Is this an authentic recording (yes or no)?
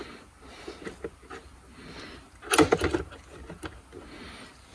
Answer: yes